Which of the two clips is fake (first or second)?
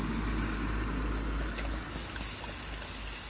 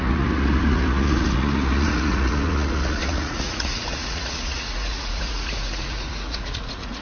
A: second